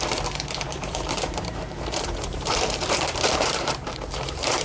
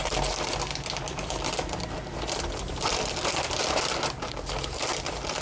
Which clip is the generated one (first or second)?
first